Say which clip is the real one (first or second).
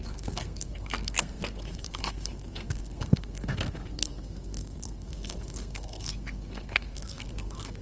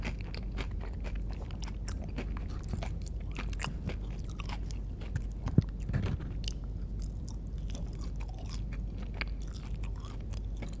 second